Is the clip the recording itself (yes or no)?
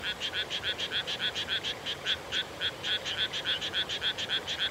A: yes